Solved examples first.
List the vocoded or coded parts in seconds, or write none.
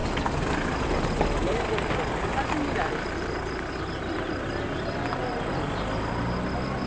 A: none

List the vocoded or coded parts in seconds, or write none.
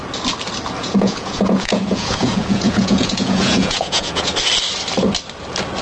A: 0.8-4.3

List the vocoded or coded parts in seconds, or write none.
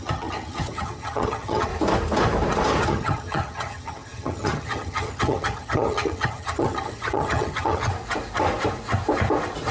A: 0.0-1.7; 2.9-7.9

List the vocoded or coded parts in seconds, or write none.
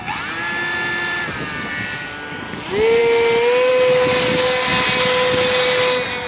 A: none